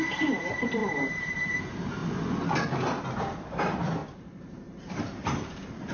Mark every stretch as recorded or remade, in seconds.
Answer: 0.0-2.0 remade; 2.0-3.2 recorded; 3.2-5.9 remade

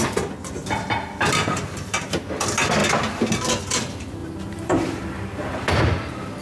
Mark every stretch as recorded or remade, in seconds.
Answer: 0.0-1.4 recorded; 1.4-2.2 remade; 2.2-4.2 recorded; 4.2-5.8 remade; 5.8-6.4 recorded

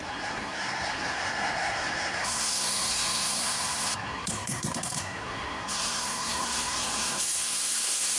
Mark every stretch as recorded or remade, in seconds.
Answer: 0.0-8.2 remade

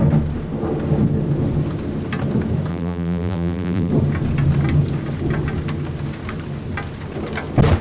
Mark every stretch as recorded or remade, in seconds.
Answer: 0.0-2.7 recorded; 2.7-3.9 remade; 3.9-7.8 recorded

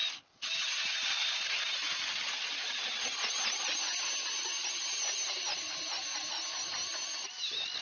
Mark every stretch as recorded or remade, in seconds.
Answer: 0.0-7.8 recorded

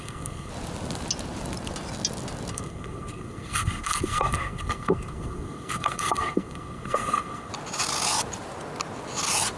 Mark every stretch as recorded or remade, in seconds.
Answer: 0.0-0.5 remade; 0.5-2.5 recorded; 2.5-7.5 remade; 7.5-9.6 recorded

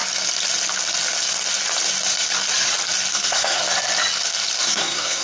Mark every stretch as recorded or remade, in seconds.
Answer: 0.0-3.1 recorded; 3.1-3.6 remade; 3.6-4.6 recorded; 4.6-5.2 remade

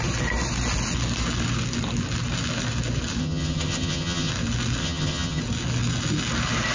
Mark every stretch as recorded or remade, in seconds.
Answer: 0.0-3.2 recorded; 3.2-4.3 remade; 4.3-4.8 recorded; 4.8-5.4 remade; 5.4-6.7 recorded